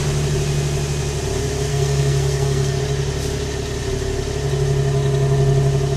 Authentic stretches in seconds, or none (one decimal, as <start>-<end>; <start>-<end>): 0.0-1.7; 2.8-6.0